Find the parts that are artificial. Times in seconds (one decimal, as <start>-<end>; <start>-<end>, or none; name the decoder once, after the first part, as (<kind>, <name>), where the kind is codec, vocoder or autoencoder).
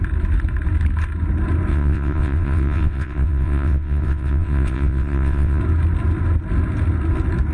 1.7-5.6 (vocoder, WaveNeXt)